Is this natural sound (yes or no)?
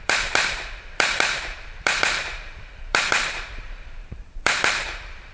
no